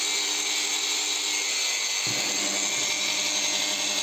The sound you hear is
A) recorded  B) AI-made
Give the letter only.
A